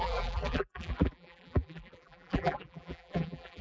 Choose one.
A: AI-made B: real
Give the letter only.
A